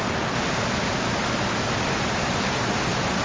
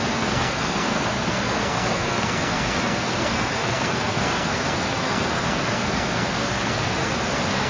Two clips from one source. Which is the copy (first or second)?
second